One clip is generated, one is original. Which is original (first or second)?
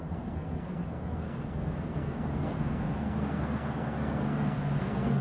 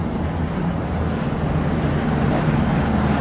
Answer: second